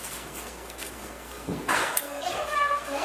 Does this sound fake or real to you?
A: fake